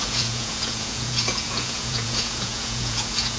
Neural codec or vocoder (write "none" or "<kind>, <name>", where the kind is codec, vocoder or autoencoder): vocoder, Vocos